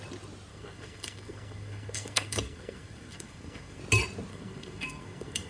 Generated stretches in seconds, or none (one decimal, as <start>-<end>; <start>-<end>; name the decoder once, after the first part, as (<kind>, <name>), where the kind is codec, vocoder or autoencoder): 0.5-3.8 (codec, SNAC); 4.3-5.5